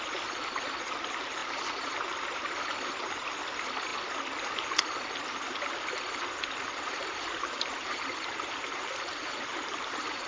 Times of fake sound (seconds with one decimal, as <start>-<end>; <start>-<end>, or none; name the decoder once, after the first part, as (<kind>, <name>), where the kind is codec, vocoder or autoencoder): 1.4-2.4 (vocoder, BigVGAN v2); 7.0-10.3

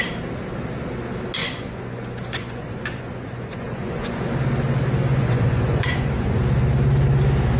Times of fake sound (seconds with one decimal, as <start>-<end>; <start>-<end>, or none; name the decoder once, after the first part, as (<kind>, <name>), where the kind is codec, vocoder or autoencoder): 1.4-4.3 (vocoder, Vocos); 5.1-6.4

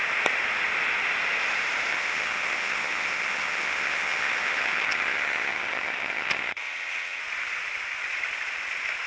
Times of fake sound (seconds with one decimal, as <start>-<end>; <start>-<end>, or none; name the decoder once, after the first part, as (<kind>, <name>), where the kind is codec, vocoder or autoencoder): 1.9-7.2 (vocoder, HiFi-GAN)

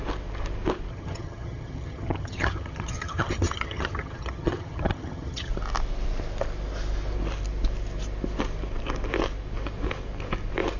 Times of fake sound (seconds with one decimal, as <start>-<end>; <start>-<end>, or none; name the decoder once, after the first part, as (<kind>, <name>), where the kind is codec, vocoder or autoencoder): 0.9-5.5 (vocoder, HiFi-GAN)

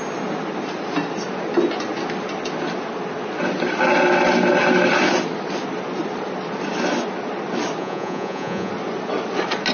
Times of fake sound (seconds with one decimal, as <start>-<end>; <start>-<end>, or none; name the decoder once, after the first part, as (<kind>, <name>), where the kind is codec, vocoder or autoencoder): 7.8-8.7 (vocoder, Vocos)

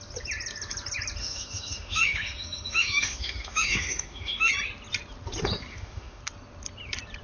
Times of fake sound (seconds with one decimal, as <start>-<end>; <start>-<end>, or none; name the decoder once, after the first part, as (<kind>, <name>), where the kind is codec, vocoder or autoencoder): 1.2-4.5 (autoencoder, DAC-VAE); 5.7-6.2